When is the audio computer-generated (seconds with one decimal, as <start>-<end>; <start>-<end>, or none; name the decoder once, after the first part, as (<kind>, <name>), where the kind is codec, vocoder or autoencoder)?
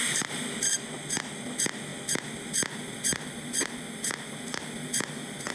none